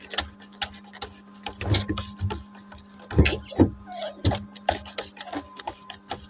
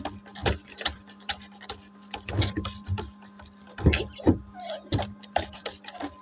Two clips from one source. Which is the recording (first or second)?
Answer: first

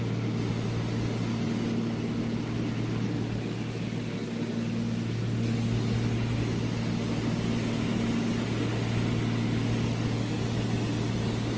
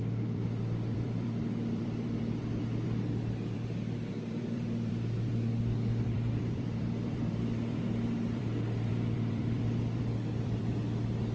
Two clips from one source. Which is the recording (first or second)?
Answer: first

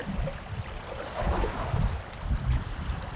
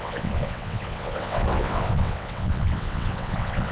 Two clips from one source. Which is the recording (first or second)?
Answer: first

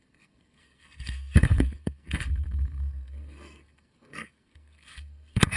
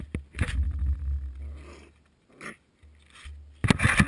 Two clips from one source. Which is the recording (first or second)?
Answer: second